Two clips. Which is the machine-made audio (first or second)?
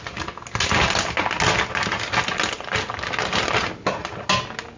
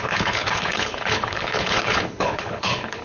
second